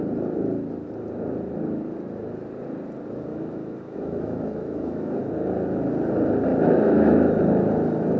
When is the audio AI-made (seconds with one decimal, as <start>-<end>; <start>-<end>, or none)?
3.3-5.2; 6.5-7.4